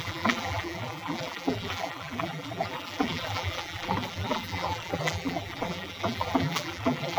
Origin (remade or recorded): remade